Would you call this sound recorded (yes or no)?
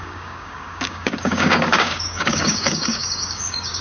no